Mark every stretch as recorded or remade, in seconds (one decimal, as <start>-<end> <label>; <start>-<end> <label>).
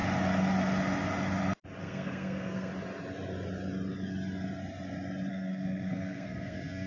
0.0-1.8 recorded; 1.8-2.7 remade; 2.7-5.3 recorded; 5.3-6.9 remade